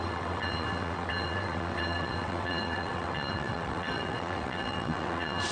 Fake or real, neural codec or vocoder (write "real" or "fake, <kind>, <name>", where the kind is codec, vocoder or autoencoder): fake, vocoder, WaveNeXt